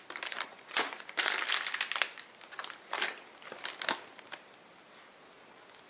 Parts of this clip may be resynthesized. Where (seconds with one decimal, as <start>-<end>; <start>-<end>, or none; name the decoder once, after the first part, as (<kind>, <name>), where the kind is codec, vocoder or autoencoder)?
0.5-1.3 (vocoder, Vocos)